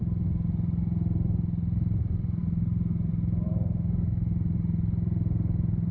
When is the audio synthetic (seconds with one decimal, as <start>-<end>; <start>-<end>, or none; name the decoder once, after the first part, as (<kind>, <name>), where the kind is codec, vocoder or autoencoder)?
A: none